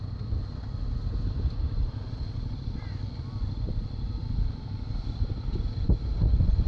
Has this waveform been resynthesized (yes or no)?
no